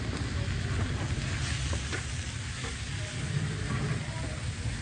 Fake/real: real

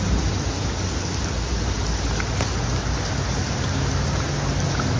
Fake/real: real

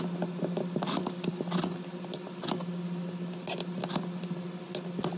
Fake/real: real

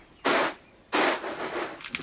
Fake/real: real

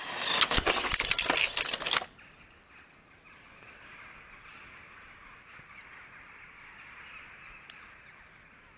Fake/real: real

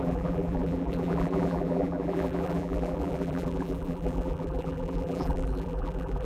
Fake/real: fake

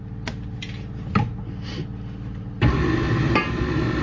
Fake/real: real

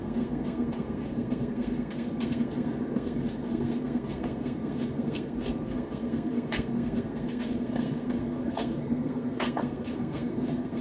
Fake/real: fake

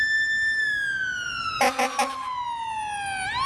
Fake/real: real